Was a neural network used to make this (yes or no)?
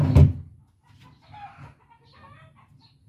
no